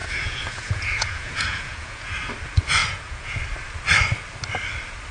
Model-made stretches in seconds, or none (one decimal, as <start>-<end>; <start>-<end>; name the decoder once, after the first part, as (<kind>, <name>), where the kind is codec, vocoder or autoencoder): 0.0-2.3 (vocoder, Vocos); 2.8-3.4